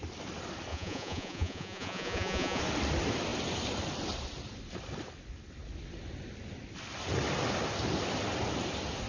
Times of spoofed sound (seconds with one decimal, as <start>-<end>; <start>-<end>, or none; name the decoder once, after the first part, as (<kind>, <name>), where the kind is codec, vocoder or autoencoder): 0.7-2.6 (vocoder, Vocos)

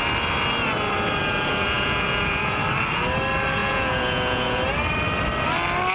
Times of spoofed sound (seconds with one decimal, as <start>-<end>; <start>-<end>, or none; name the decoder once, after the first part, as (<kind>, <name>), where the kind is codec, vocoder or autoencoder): 1.2-2.6 (vocoder, Vocos); 3.6-4.6

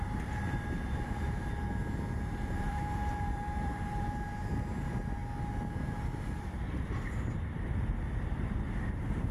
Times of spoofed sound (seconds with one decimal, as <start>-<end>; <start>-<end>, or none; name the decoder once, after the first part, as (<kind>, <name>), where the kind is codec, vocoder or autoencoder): 0.0-5.2 (vocoder, BigVGAN v2); 7.4-9.3

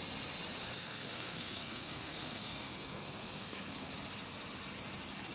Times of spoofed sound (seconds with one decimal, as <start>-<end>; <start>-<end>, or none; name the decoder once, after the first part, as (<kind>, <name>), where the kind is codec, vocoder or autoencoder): 0.7-3.9 (codec, SNAC)

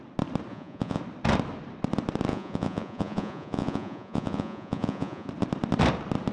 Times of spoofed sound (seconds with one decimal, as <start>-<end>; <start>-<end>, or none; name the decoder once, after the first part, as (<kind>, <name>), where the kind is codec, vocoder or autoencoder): 0.5-1.0 (vocoder, Vocos); 2.3-5.3

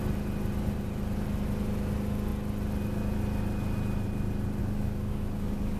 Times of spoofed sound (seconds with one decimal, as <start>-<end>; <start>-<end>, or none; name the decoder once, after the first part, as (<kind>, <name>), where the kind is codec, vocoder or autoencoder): 4.6-5.8 (codec, DAC)

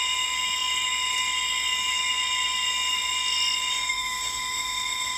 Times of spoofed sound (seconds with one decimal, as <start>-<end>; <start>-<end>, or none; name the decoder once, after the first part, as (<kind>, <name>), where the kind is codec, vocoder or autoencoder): 3.7-5.2 (autoencoder, DAC-VAE)

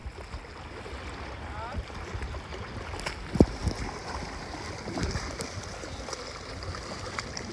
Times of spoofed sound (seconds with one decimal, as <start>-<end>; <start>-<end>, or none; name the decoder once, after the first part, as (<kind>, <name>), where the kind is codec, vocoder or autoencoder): none